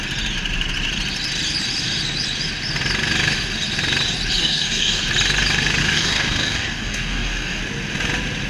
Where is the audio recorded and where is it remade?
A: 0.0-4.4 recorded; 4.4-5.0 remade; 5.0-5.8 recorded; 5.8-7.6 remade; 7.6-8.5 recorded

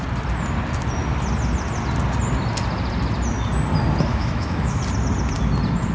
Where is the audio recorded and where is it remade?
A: 0.0-4.1 recorded; 4.1-4.8 remade; 4.8-5.9 recorded

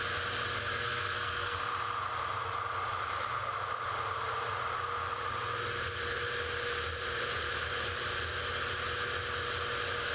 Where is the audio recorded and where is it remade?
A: 0.0-0.7 recorded; 0.7-1.6 remade; 1.6-10.1 recorded

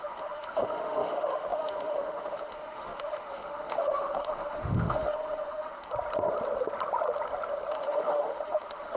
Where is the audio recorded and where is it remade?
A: 0.0-5.9 remade; 5.9-7.7 recorded; 7.7-9.0 remade

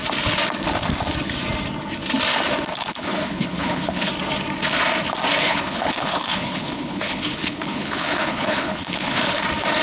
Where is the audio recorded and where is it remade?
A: 0.0-2.8 recorded; 2.8-4.1 remade; 4.1-5.4 recorded; 5.4-9.4 remade; 9.4-9.8 recorded

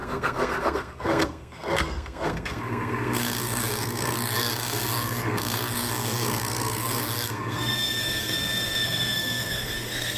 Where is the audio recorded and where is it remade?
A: 0.0-10.2 remade

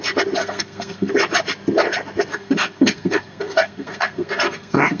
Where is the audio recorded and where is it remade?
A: 0.0-0.4 recorded; 0.4-1.1 remade; 1.1-2.3 recorded; 2.3-5.0 remade

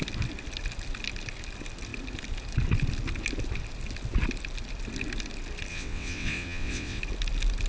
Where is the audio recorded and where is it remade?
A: 0.0-5.7 recorded; 5.7-7.0 remade; 7.0-7.7 recorded